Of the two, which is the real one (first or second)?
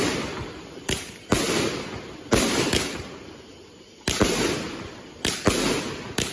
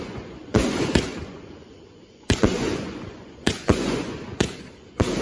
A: first